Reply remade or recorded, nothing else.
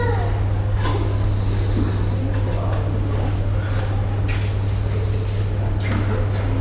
recorded